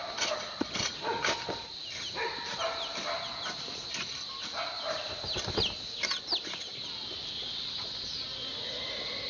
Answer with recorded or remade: recorded